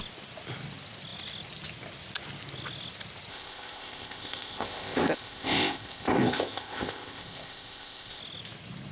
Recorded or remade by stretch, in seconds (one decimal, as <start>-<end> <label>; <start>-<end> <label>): 0.0-3.3 recorded; 3.3-8.2 remade; 8.2-8.9 recorded